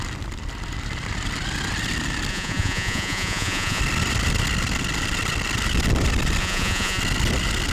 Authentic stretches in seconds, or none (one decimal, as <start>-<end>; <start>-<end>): 0.0-2.3; 3.8-6.4; 7.0-7.7

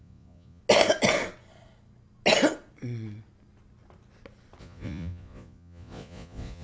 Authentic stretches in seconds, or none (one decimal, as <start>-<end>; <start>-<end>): 0.6-4.6

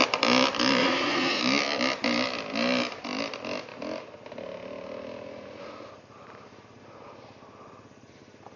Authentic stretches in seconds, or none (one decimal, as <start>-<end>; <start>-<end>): 0.0-0.8; 1.4-8.6

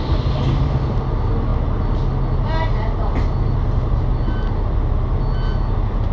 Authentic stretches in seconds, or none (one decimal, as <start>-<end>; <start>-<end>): 0.0-6.1

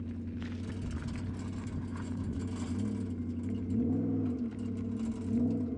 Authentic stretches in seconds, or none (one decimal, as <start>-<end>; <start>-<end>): 0.0-1.9; 2.4-5.8

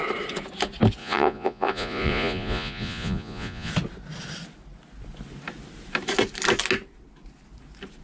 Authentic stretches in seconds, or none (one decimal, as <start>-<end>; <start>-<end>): 0.0-1.0; 3.7-8.0

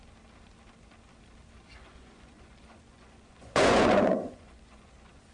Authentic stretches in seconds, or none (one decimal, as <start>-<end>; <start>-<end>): 0.0-1.8